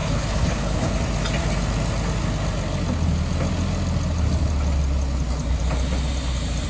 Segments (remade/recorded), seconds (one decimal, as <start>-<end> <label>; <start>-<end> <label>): 0.0-1.0 remade; 1.0-6.7 recorded